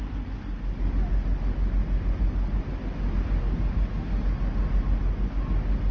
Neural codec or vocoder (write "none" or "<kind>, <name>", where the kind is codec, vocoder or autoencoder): none